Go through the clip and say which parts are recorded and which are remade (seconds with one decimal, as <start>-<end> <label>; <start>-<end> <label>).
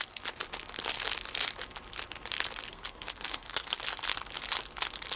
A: 0.0-2.7 recorded; 2.7-3.8 remade; 3.8-5.2 recorded